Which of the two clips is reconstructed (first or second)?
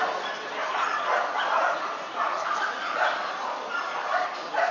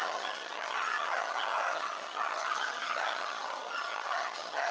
second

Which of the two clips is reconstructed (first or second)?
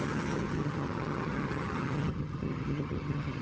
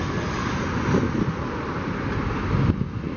first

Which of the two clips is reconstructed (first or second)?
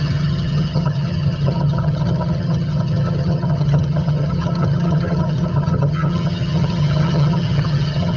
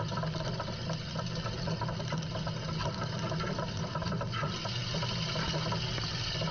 first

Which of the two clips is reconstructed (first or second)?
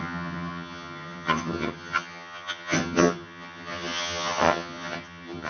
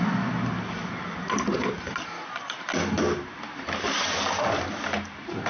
first